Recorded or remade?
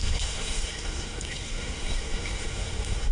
remade